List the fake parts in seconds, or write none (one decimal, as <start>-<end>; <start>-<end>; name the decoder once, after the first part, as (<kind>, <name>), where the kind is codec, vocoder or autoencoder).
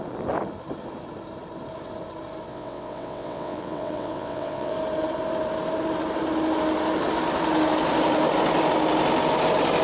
2.5-4.7 (vocoder, WaveNeXt)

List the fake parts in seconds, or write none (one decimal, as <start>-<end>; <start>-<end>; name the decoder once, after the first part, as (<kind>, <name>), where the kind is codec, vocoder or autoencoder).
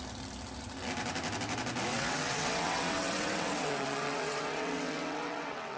1.9-5.8 (vocoder, WaveNeXt)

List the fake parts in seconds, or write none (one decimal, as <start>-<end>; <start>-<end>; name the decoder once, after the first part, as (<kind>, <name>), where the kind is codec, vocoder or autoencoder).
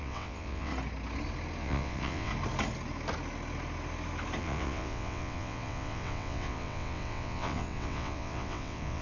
0.0-0.7 (vocoder, WaveNeXt); 1.6-2.3; 4.4-9.0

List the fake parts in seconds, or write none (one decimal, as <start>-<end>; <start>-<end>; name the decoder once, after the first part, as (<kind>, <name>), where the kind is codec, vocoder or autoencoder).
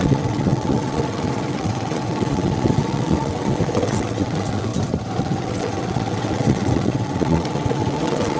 0.0-4.7 (vocoder, WaveNeXt); 5.2-8.4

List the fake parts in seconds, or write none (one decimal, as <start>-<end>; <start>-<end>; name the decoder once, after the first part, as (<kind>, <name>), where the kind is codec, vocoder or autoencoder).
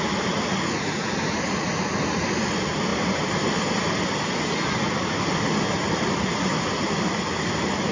none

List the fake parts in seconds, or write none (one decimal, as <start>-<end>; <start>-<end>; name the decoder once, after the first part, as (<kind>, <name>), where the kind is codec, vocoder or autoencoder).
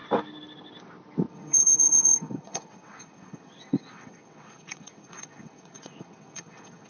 1.3-6.9 (vocoder, WaveNeXt)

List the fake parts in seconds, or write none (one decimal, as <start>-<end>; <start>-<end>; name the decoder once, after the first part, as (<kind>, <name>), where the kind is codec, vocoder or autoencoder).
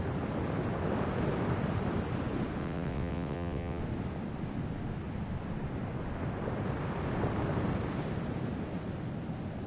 2.6-3.8 (vocoder, WaveNeXt)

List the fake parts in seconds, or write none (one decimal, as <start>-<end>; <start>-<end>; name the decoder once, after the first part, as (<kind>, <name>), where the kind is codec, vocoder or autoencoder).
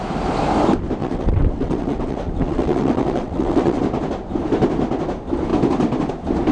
1.0-3.8 (vocoder, WaveNeXt)